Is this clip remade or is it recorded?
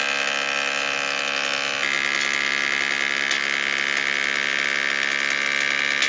recorded